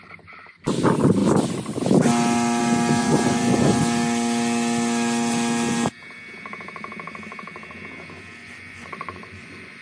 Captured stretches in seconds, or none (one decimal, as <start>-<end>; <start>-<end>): 0.0-3.0; 3.8-8.4